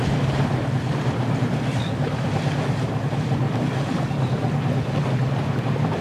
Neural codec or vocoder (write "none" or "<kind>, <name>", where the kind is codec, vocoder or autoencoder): vocoder, BigVGAN v2